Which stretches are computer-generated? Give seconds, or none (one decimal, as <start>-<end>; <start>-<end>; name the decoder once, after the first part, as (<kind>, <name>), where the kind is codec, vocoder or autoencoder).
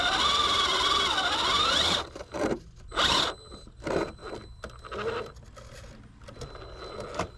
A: none